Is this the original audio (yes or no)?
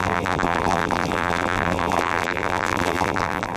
no